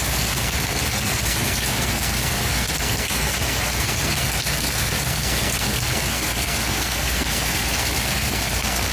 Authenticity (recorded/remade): remade